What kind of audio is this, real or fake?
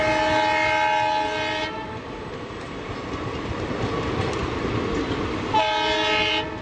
real